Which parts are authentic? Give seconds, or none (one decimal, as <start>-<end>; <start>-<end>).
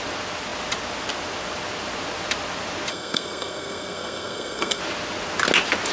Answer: 0.0-2.9; 4.8-5.9